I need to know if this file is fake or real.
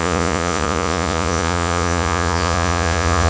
fake